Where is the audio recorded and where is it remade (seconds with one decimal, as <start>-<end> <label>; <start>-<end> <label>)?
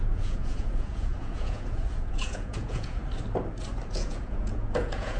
0.0-3.0 remade; 3.0-3.9 recorded; 3.9-5.2 remade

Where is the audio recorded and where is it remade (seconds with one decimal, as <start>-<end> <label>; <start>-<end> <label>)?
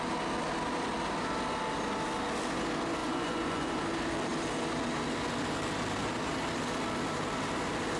0.0-3.0 recorded; 3.0-3.8 remade; 3.8-8.0 recorded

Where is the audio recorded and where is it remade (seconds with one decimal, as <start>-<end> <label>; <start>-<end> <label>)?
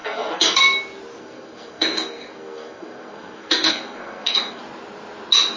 0.0-0.6 remade; 0.6-1.2 recorded; 1.2-4.6 remade; 4.6-5.6 recorded